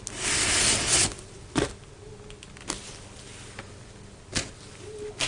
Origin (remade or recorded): recorded